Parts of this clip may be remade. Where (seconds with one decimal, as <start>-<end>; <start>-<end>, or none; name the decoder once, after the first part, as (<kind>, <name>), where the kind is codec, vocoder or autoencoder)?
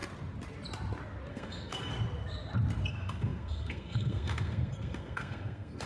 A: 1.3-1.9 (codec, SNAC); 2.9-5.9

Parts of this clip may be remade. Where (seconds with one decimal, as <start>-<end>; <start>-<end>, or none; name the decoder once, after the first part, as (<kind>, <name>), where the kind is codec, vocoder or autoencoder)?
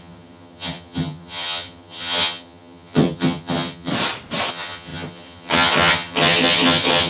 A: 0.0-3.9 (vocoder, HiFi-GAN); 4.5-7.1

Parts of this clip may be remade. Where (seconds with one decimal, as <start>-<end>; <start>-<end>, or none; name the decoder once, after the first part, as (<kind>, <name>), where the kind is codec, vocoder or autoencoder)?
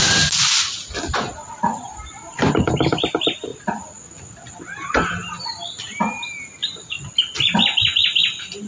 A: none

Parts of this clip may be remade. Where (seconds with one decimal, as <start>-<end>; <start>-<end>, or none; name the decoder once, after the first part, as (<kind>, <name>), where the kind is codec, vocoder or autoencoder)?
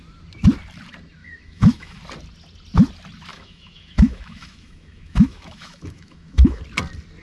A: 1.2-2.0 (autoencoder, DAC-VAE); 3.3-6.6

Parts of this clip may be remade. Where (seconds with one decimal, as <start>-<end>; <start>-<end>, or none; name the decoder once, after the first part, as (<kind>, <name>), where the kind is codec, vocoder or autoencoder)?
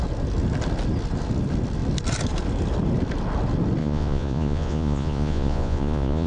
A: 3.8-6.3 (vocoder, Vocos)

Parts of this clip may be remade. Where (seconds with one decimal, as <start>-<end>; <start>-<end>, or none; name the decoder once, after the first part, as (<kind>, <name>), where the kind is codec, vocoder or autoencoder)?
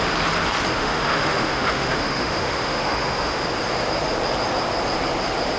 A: 0.8-3.4 (autoencoder, DAC-VAE)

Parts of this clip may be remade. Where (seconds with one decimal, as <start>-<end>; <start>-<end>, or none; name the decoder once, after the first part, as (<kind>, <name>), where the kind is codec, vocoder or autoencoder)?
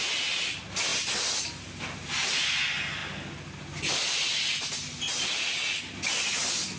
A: none